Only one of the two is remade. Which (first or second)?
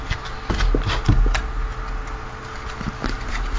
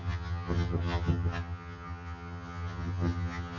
second